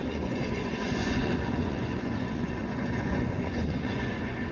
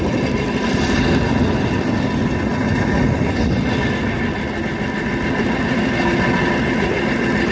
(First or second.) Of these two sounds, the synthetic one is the first